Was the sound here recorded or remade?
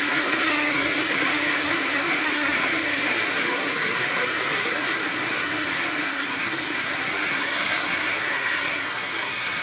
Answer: remade